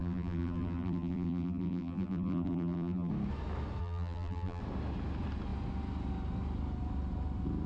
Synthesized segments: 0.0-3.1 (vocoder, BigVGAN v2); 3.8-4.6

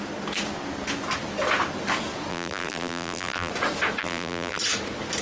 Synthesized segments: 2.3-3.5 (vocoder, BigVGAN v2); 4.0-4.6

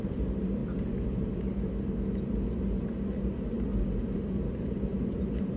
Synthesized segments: 0.0-0.6 (vocoder, BigVGAN v2); 4.0-5.6

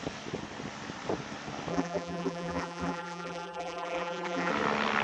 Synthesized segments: 1.7-4.5 (vocoder, BigVGAN v2)

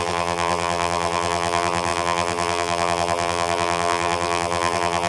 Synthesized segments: 0.0-5.1 (vocoder, BigVGAN v2)